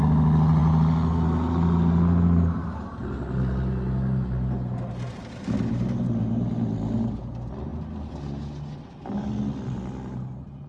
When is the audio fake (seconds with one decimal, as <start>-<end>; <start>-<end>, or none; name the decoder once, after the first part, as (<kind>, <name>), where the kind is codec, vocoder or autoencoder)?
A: none